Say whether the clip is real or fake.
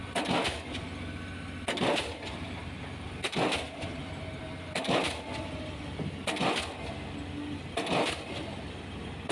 real